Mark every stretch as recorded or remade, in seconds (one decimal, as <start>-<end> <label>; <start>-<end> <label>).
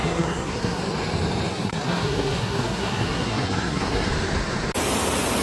0.0-0.8 remade; 0.8-1.5 recorded; 1.5-4.1 remade; 4.1-5.4 recorded